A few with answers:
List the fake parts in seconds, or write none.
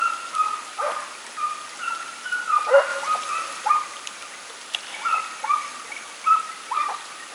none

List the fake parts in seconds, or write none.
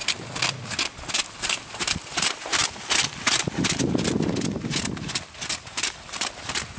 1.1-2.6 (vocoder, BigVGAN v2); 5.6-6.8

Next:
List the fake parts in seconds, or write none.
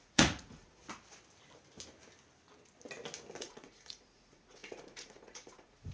0.0-0.8 (vocoder, Vocos); 3.4-5.9